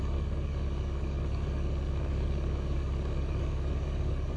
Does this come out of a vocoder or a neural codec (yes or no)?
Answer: yes